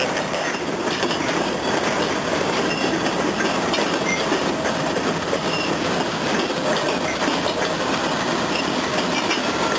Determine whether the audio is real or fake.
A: real